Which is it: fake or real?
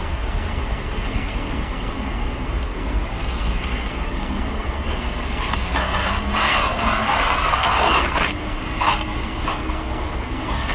fake